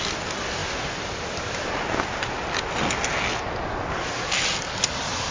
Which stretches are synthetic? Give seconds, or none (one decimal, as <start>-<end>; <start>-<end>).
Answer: none